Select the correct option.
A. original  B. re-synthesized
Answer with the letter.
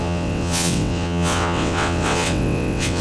B